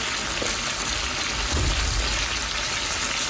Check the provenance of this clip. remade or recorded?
recorded